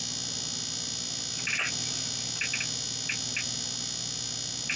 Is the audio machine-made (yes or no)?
no